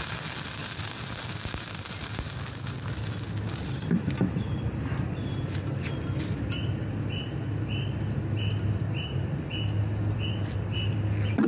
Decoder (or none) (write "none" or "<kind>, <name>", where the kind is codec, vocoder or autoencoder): none